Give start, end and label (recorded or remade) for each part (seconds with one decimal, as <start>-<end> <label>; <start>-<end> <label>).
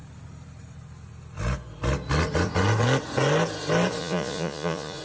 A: 0.0-4.0 recorded; 4.0-5.0 remade